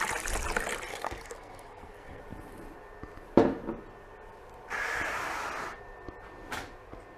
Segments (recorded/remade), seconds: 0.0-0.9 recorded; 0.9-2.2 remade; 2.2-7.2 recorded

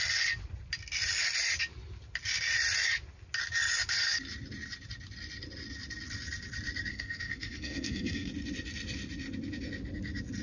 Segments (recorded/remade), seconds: 0.0-6.9 recorded; 6.9-8.3 remade; 8.3-10.4 recorded

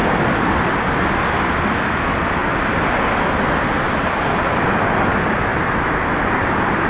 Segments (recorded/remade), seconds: 0.0-6.9 recorded

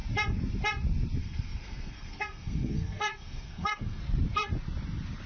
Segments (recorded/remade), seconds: 0.0-1.2 recorded; 1.2-4.0 remade; 4.0-5.3 recorded